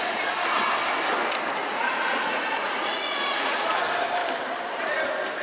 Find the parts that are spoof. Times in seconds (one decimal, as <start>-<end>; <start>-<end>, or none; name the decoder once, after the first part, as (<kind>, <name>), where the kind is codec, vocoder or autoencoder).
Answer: 1.6-3.8 (vocoder, Vocos)